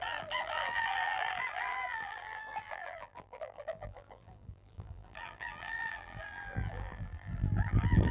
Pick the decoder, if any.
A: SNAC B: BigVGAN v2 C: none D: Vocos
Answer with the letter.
B